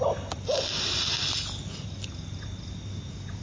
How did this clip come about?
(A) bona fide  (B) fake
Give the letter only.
A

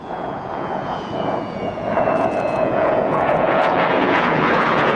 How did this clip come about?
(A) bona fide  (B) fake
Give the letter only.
B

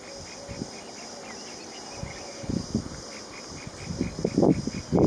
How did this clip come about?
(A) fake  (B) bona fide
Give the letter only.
B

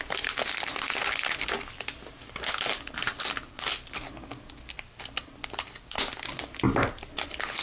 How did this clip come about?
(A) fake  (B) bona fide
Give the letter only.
B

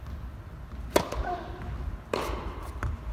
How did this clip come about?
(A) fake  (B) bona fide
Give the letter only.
B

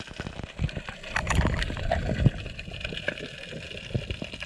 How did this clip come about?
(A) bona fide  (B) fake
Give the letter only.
A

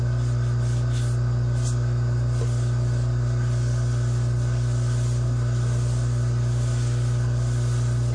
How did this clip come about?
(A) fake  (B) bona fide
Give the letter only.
B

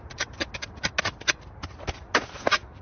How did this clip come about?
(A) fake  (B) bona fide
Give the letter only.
B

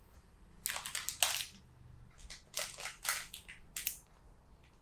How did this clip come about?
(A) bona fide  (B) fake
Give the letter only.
A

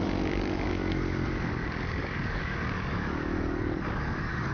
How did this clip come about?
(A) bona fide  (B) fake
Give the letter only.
B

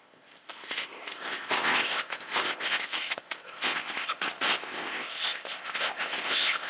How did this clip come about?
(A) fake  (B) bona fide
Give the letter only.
A